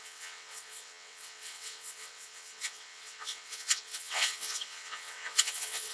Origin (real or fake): fake